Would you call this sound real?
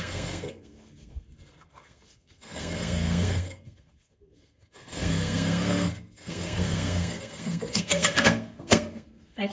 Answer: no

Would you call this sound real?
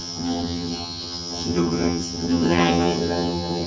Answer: no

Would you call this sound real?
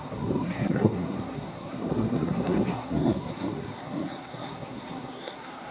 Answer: no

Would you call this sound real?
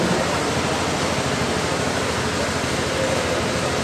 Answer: yes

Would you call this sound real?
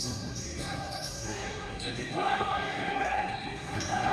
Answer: no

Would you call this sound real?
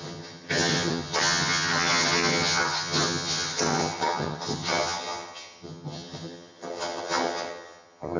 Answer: no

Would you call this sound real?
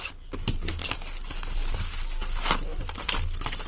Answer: yes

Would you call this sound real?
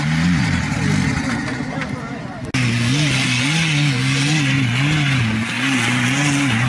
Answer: yes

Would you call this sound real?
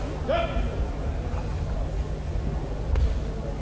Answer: yes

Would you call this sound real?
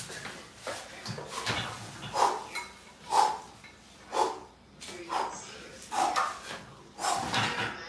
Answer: yes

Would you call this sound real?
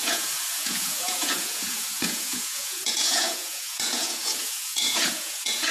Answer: no